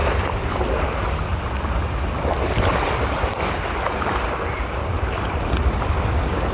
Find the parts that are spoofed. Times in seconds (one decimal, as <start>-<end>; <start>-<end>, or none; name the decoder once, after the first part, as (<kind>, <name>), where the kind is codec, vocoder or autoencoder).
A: none